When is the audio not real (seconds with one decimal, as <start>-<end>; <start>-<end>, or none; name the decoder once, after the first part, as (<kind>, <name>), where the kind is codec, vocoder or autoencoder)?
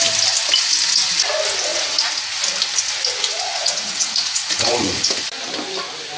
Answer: 1.7-2.2 (vocoder, Vocos); 3.5-5.3